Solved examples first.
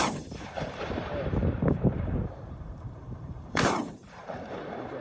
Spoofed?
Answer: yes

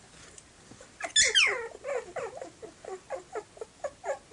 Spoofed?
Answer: no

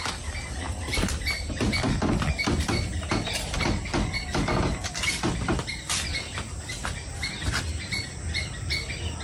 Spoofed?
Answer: no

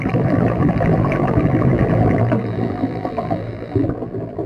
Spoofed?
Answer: yes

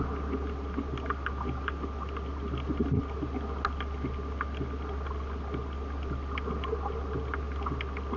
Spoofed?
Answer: no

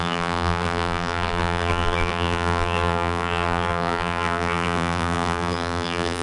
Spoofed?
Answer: yes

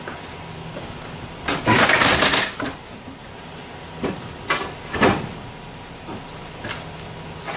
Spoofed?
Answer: no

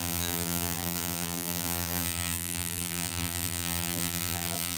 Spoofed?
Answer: yes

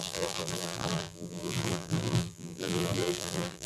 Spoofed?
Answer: yes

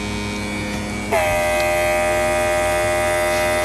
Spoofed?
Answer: no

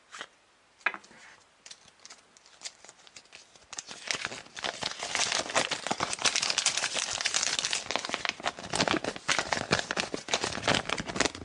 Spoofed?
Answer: no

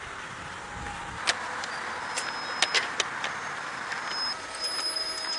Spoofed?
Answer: no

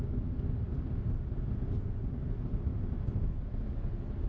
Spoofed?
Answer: no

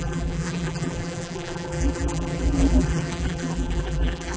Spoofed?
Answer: yes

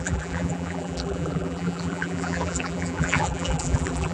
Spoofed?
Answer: yes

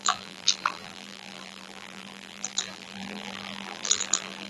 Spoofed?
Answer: yes